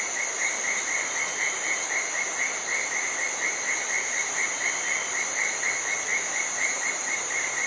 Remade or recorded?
recorded